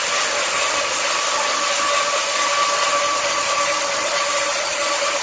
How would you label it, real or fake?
real